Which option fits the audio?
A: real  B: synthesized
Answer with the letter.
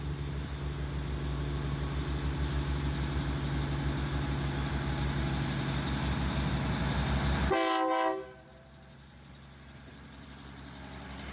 A